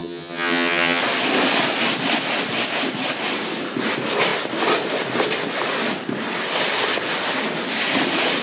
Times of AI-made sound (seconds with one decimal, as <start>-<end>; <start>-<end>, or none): 0.0-1.0